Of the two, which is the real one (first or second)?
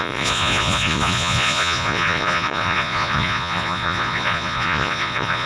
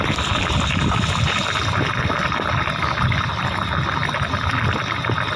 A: second